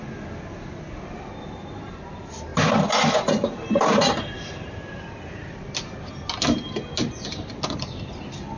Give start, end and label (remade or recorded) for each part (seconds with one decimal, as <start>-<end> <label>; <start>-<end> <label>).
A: 0.0-8.6 recorded

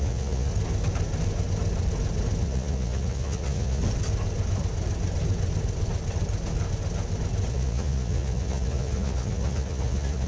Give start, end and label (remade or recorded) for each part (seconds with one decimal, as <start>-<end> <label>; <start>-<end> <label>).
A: 0.0-0.5 remade; 0.5-2.4 recorded; 2.4-3.8 remade; 3.8-7.5 recorded; 7.5-10.3 remade

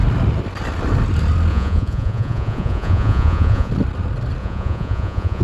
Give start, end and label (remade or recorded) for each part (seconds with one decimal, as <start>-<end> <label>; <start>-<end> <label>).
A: 0.0-1.5 recorded; 1.5-3.7 remade; 3.7-4.4 recorded; 4.4-5.4 remade

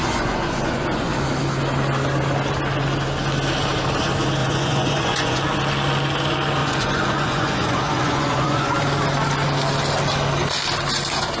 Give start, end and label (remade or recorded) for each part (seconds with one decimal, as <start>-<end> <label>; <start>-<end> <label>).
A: 0.0-1.1 remade; 1.1-4.4 recorded; 4.4-5.4 remade; 5.4-6.6 recorded; 6.6-8.8 remade; 8.8-11.4 recorded

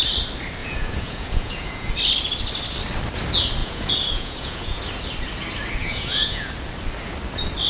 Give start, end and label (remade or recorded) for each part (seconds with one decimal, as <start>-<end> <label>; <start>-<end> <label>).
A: 0.0-0.6 recorded; 0.6-1.9 remade; 1.9-3.6 recorded; 3.6-4.8 remade; 4.8-5.8 recorded; 5.8-6.5 remade; 6.5-7.7 recorded

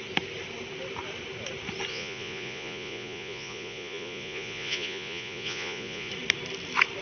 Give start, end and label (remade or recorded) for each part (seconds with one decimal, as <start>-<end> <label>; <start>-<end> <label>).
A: 0.0-1.9 recorded; 1.9-6.1 remade; 6.1-7.0 recorded

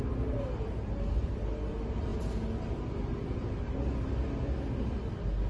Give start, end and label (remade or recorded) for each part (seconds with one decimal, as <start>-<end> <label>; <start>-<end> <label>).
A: 0.0-5.5 recorded